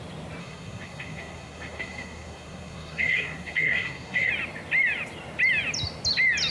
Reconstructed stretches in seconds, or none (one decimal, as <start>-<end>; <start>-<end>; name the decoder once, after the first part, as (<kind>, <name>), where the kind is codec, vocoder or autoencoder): 0.4-4.3 (codec, SNAC)